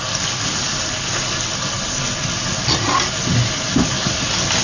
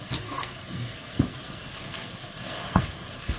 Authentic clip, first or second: first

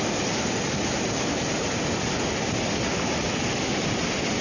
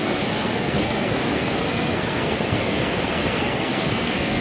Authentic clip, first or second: first